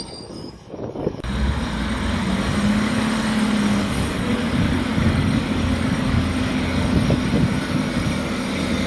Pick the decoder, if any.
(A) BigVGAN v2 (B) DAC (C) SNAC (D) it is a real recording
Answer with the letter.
B